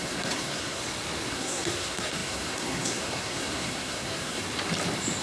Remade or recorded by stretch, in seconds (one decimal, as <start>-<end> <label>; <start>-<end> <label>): 0.0-0.8 remade; 0.8-1.3 recorded; 1.3-4.4 remade; 4.4-5.2 recorded